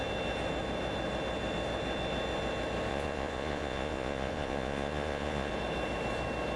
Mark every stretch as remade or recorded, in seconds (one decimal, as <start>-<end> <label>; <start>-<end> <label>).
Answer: 0.0-2.9 recorded; 2.9-5.5 remade; 5.5-6.6 recorded